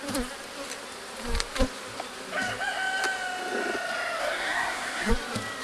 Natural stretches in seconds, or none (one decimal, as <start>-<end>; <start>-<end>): 0.0-4.2; 5.1-5.6

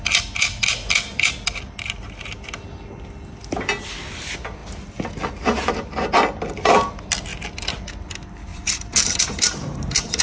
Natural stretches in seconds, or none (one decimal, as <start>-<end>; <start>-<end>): 0.0-7.3; 7.9-8.5

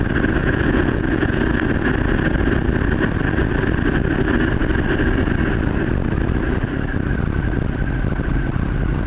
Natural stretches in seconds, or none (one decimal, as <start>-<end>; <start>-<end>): 0.0-0.4; 1.4-9.1